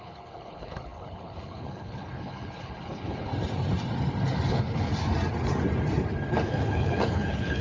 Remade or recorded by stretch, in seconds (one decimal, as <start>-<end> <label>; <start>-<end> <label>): 0.0-3.3 remade; 3.3-4.5 recorded; 4.5-4.9 remade; 4.9-6.3 recorded; 6.3-7.6 remade